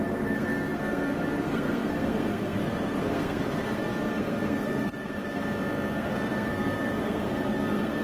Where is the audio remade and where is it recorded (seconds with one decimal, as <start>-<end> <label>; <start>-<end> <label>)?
0.0-5.4 remade; 5.4-5.9 recorded; 5.9-8.0 remade

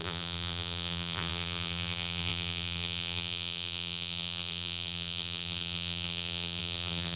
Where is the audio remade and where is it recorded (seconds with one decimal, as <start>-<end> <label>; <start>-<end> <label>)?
0.0-7.2 remade

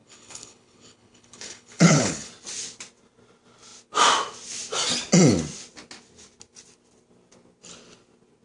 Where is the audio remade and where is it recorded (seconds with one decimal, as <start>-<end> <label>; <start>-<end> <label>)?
0.0-2.3 remade; 2.3-8.4 recorded

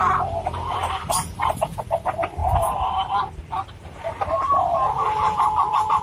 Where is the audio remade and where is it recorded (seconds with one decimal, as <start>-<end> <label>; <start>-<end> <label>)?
0.0-6.0 remade

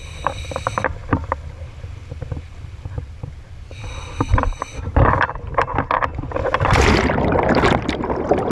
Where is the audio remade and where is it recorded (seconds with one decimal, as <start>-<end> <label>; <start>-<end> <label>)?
0.0-8.5 recorded